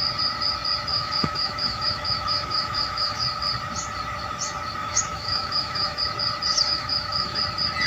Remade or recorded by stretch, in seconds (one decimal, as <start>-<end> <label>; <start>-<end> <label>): 0.0-0.9 recorded; 0.9-3.2 remade; 3.2-4.8 recorded; 4.8-6.0 remade; 6.0-6.5 recorded; 6.5-7.4 remade; 7.4-7.9 recorded